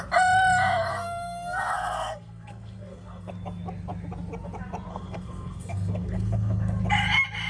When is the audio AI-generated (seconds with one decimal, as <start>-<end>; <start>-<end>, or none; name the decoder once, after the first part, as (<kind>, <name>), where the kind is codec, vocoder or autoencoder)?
0.9-3.3 (codec, SNAC); 4.9-6.8